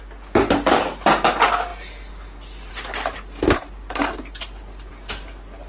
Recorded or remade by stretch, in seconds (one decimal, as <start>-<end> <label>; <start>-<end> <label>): 0.0-5.7 recorded